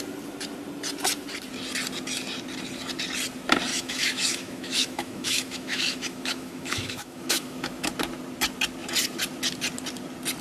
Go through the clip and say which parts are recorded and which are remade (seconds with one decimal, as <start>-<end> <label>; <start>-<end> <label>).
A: 0.0-3.7 recorded; 3.7-7.9 remade; 7.9-10.4 recorded